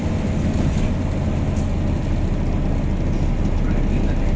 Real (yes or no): yes